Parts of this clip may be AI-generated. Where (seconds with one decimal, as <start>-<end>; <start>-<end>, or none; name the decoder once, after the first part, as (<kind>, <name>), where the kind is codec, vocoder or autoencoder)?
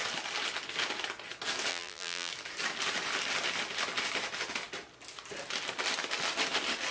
1.7-2.3 (vocoder, BigVGAN v2)